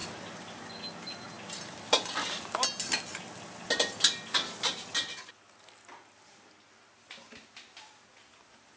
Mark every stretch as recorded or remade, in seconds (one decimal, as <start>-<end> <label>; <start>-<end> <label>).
0.0-8.8 recorded